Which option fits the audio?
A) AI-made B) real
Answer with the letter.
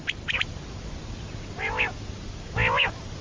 B